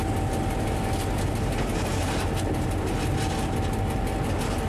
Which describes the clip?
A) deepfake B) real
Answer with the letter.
B